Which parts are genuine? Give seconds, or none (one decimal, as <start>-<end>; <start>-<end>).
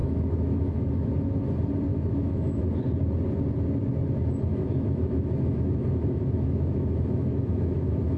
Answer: 0.9-1.9; 2.6-4.5